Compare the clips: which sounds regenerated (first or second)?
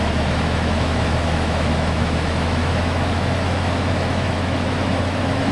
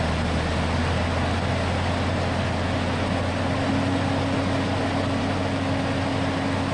first